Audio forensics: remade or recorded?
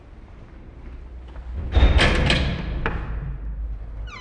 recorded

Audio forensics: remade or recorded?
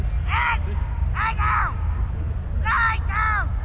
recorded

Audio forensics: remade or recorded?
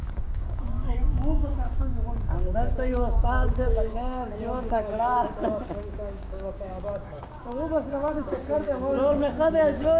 remade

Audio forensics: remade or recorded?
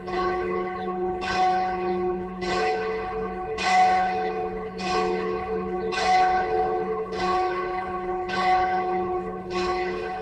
remade